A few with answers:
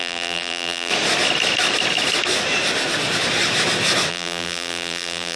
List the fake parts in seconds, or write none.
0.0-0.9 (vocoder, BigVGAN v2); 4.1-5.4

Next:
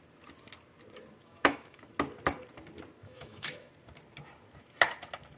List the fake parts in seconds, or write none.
1.2-1.9 (autoencoder, DAC-VAE); 3.0-3.7

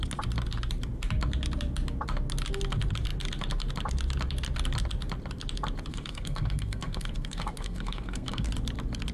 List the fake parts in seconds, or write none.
5.9-8.5 (codec, SNAC)

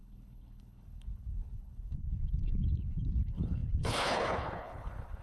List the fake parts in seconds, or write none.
0.0-5.2 (codec, HILCodec)

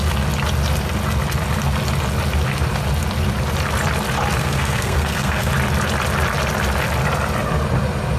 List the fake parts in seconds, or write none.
4.4-5.5 (codec, SNAC)

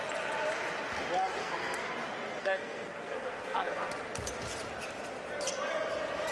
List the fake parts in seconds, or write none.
1.4-1.9 (codec, SNAC); 2.4-3.9

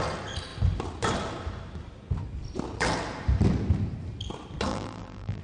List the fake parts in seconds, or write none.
4.7-5.4 (vocoder, BigVGAN v2)

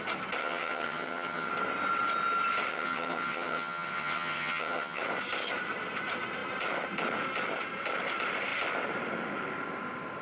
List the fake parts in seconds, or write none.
0.4-1.5 (vocoder, HiFi-GAN); 2.7-5.0